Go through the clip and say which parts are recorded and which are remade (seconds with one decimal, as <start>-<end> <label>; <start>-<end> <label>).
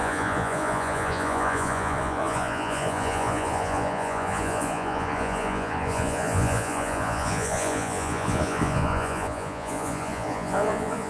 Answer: 0.0-11.1 remade